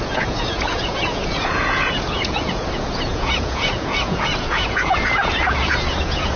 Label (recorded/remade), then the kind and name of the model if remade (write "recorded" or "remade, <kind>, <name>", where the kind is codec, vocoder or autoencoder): remade, vocoder, Vocos